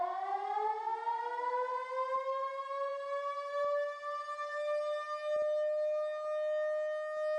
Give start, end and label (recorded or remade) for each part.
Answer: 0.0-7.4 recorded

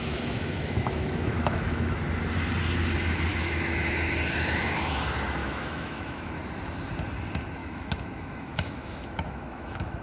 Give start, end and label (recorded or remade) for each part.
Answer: 0.0-2.0 remade; 2.0-3.3 recorded; 3.3-3.9 remade; 3.9-5.4 recorded; 5.4-6.3 remade; 6.3-7.6 recorded; 7.6-10.0 remade

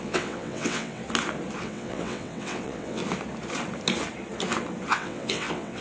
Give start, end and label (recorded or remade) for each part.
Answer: 0.0-1.0 remade; 1.0-1.6 recorded; 1.6-3.0 remade; 3.0-4.9 recorded; 4.9-5.8 remade

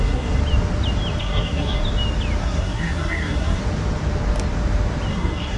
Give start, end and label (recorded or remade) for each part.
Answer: 0.0-0.4 remade; 0.4-1.2 recorded; 1.2-1.8 remade; 1.8-2.4 recorded; 2.4-3.6 remade; 3.6-5.1 recorded; 5.1-5.6 remade

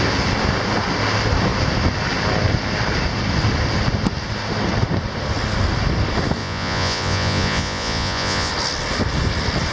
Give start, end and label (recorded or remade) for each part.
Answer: 0.0-6.4 recorded; 6.4-8.5 remade; 8.5-9.7 recorded

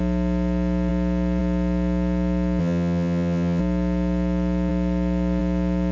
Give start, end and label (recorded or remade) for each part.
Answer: 0.0-2.6 recorded; 2.6-3.6 remade; 3.6-5.9 recorded

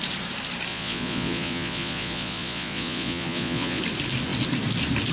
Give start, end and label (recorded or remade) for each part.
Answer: 0.0-0.7 recorded; 0.7-3.8 remade; 3.8-5.1 recorded